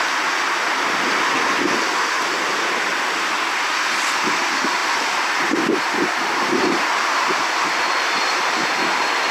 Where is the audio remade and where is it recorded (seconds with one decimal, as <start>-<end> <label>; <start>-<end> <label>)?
0.0-9.3 recorded